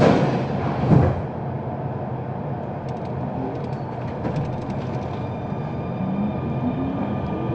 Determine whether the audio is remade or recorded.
recorded